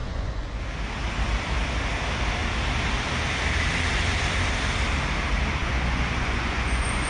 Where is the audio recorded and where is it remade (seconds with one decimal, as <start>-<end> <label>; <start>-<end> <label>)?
0.0-0.6 remade; 0.6-5.6 recorded; 5.6-7.1 remade